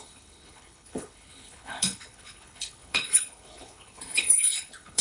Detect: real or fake fake